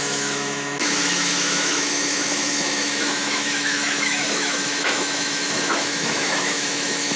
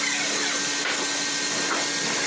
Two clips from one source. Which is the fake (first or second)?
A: first